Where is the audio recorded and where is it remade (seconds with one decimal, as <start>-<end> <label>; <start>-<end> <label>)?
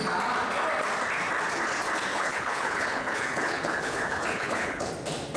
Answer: 0.0-2.1 recorded; 2.1-4.9 remade; 4.9-5.4 recorded